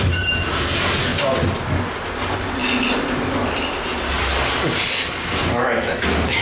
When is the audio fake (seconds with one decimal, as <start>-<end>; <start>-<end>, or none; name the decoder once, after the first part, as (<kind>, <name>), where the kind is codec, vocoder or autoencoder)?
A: none